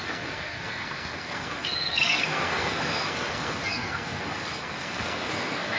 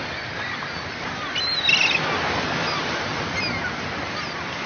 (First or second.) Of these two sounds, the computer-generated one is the first